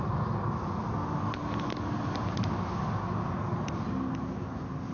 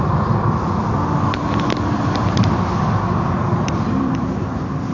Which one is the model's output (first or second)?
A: second